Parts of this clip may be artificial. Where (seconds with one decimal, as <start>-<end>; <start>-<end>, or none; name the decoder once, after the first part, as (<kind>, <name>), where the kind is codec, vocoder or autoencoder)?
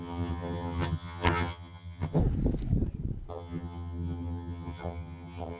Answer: 0.0-2.2 (vocoder, HiFi-GAN); 3.3-5.6